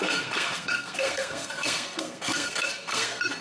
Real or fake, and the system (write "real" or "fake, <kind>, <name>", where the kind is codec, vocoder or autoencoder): fake, codec, SNAC